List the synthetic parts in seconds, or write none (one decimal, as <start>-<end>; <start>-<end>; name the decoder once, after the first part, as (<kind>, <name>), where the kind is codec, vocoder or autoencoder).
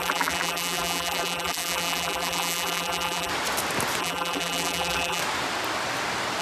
0.0-3.3 (vocoder, BigVGAN v2); 4.0-5.2